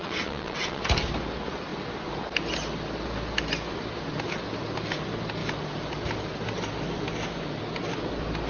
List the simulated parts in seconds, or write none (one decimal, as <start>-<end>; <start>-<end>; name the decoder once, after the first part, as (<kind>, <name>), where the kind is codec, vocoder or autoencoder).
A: 0.0-0.8 (vocoder, WaveNeXt)